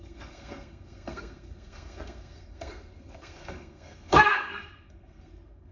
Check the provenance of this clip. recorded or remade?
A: remade